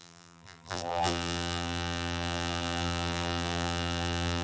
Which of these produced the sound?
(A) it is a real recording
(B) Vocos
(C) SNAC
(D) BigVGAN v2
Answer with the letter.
D